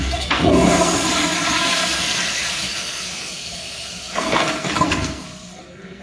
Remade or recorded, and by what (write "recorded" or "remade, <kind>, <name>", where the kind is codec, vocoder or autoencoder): remade, codec, SNAC